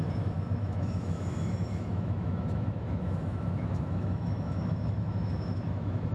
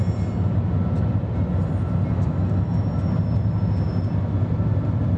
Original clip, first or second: second